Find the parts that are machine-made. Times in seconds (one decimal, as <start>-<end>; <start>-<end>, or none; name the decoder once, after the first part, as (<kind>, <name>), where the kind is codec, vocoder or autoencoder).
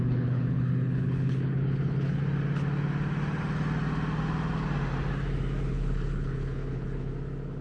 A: 0.0-2.2 (codec, HILCodec); 5.7-7.1